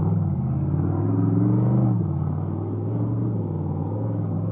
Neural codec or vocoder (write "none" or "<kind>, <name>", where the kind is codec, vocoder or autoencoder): none